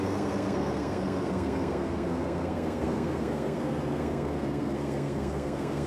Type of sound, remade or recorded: remade